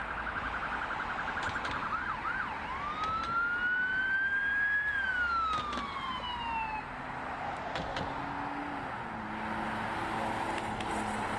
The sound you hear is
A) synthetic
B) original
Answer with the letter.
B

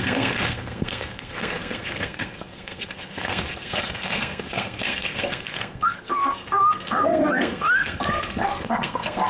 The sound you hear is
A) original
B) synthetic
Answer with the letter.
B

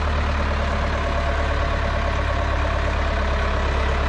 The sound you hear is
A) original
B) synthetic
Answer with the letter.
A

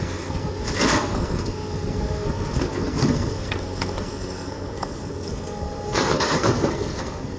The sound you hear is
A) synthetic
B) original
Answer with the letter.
A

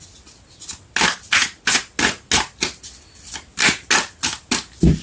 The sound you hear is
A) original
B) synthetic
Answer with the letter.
A